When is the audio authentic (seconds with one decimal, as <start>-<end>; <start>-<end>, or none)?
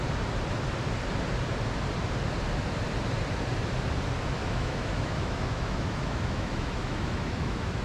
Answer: 0.0-4.4